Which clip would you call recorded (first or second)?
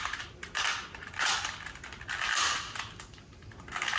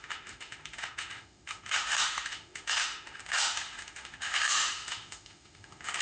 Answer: first